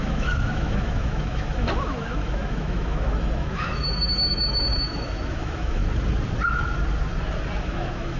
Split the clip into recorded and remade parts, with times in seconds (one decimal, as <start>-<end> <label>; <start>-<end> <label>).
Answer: 0.0-5.8 remade; 5.8-7.6 recorded; 7.6-8.2 remade